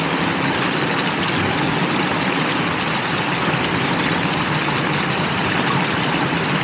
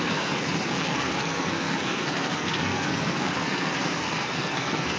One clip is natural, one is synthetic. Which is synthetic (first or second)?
second